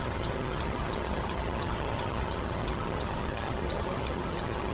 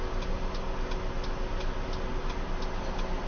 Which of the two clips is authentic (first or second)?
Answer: second